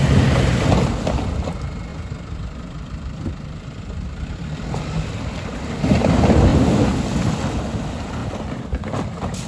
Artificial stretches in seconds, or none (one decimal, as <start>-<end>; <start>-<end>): 1.9-4.7; 6.5-7.3; 8.2-8.8